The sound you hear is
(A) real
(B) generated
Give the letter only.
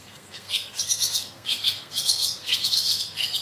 B